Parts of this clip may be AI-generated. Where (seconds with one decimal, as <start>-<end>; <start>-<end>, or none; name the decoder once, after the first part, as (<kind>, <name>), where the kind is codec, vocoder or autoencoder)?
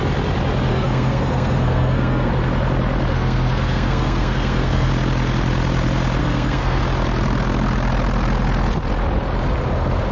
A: 0.7-2.3 (codec, SNAC); 3.1-4.9; 6.2-6.8